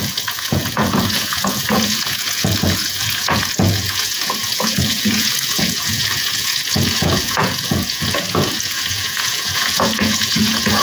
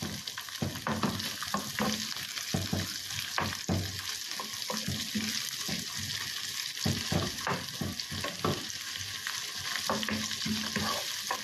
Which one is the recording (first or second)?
second